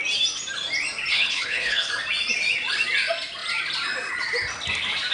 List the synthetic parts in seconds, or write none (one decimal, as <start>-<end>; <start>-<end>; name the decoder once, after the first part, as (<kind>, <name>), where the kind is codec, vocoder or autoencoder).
1.1-1.9 (codec, HILCodec)